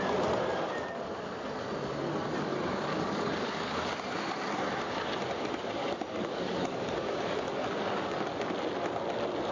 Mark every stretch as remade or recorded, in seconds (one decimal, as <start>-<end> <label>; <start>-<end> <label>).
0.0-2.5 recorded; 2.5-3.8 remade; 3.8-5.8 recorded; 5.8-8.5 remade; 8.5-9.5 recorded